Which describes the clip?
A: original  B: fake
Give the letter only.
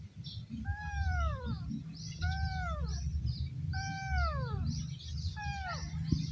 A